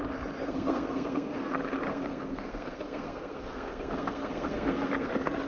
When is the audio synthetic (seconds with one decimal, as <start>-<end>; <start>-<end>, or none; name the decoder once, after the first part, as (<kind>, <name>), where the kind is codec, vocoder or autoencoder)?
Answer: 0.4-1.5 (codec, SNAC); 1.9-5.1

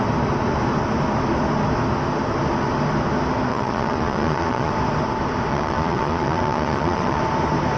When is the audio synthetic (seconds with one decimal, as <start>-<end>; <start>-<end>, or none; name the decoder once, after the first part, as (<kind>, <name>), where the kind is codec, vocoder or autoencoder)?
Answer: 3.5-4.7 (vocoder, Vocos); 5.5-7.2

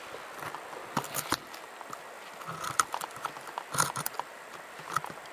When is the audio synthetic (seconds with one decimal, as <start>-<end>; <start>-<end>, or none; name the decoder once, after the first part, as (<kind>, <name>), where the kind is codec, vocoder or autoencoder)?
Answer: none